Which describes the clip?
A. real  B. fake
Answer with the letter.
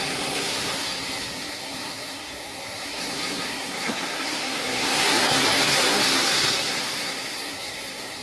B